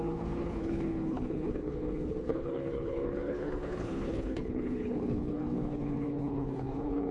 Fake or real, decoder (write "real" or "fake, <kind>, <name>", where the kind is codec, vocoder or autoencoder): fake, codec, HILCodec